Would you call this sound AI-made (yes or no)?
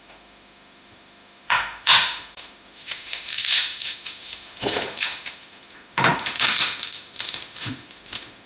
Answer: yes